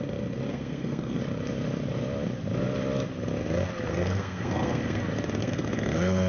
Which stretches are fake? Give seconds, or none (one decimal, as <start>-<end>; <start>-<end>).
0.5-1.2; 3.9-5.0; 5.4-6.3